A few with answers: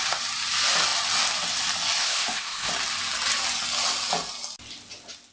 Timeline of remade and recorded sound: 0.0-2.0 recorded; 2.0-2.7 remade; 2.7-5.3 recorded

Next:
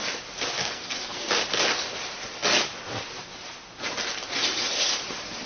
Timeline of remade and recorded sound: 0.0-0.6 recorded; 0.6-1.3 remade; 1.3-5.5 recorded

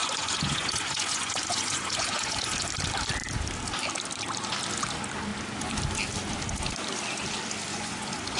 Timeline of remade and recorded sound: 0.0-2.7 remade; 2.7-7.7 recorded; 7.7-8.4 remade

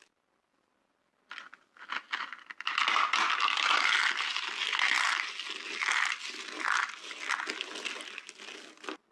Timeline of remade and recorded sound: 0.0-9.1 recorded

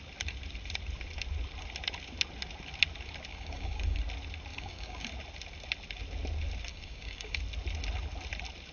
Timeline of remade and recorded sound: 0.0-3.3 recorded; 3.3-4.0 remade; 4.0-4.5 recorded; 4.5-5.1 remade; 5.1-6.7 recorded; 6.7-7.4 remade; 7.4-8.7 recorded

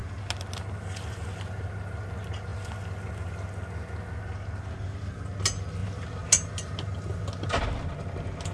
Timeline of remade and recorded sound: 0.0-8.5 recorded

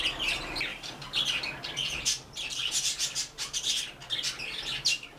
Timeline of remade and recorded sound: 0.0-0.7 recorded; 0.7-3.8 remade; 3.8-5.2 recorded